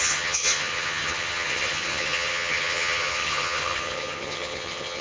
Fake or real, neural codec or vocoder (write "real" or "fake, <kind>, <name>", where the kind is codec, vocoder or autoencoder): fake, vocoder, HiFi-GAN